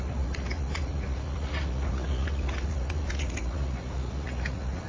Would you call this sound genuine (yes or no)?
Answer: no